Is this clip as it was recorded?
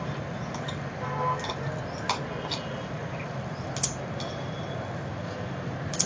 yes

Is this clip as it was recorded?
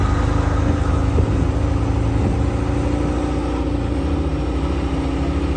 yes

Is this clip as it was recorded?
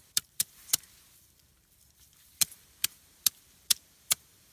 no